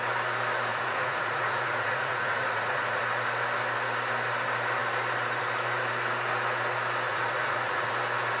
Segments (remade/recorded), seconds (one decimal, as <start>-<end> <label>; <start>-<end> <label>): 0.0-0.7 recorded; 0.7-3.0 remade; 3.0-7.1 recorded; 7.1-8.0 remade; 8.0-8.4 recorded